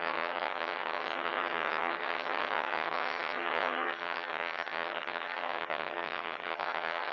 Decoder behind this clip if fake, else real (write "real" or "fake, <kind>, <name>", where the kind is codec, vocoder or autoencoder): fake, vocoder, HiFi-GAN